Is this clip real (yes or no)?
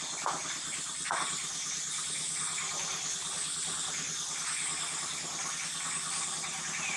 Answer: yes